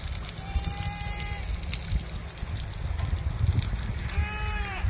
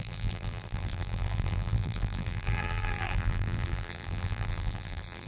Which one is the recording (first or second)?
first